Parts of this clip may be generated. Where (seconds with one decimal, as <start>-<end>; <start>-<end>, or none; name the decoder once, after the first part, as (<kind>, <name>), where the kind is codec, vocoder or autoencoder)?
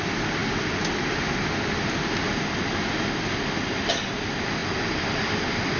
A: none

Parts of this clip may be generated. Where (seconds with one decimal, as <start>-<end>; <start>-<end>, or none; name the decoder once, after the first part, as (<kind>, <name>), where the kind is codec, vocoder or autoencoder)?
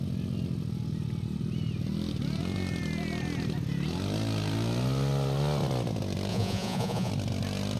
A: 6.3-7.1 (vocoder, Vocos)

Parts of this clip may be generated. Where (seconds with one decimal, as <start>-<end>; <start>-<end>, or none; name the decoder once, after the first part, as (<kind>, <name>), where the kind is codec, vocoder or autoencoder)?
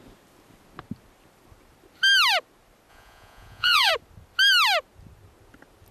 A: 2.9-3.9 (vocoder, Vocos)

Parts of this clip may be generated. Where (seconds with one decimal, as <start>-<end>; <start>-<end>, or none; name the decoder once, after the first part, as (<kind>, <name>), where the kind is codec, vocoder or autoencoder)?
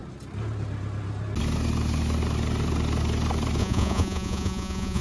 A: 3.6-5.0 (vocoder, Vocos)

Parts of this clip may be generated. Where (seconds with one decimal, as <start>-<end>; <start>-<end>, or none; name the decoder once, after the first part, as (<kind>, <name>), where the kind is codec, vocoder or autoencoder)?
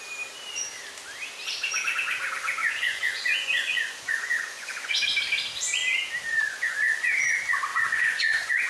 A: 2.6-5.0 (vocoder, Vocos); 6.3-7.1; 7.7-8.7